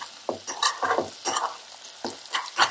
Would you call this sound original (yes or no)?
yes